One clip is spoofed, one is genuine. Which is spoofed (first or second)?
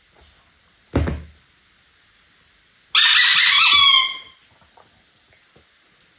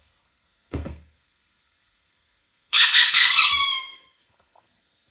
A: second